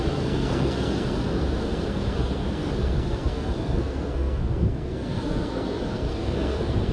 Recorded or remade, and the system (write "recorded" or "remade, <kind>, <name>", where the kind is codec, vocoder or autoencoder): remade, codec, SNAC